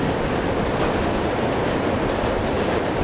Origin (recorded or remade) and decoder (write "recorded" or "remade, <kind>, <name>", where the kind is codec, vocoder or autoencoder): recorded